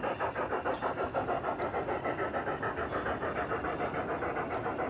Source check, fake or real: real